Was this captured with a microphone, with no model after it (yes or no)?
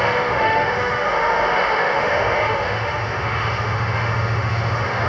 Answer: no